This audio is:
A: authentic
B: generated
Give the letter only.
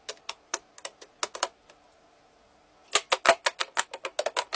A